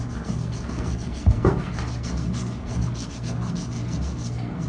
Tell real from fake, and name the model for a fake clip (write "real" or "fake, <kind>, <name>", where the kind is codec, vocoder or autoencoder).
fake, codec, SNAC